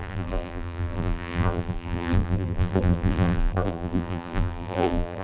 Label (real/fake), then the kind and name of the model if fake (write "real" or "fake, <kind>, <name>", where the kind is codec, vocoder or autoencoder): fake, vocoder, BigVGAN v2